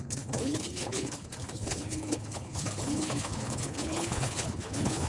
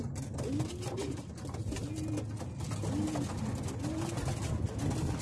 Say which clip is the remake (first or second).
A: first